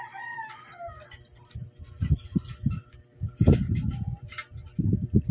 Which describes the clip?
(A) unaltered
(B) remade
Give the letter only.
A